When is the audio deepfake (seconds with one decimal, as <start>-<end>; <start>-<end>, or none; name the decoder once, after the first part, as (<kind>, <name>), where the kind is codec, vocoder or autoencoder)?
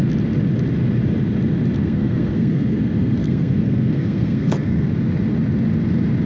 1.8-4.9 (codec, SNAC)